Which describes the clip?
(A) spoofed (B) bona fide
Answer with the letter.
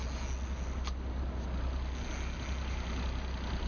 B